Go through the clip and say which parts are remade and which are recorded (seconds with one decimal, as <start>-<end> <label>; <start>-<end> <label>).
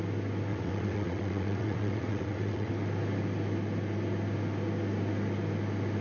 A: 0.0-0.5 recorded; 0.5-2.7 remade; 2.7-6.0 recorded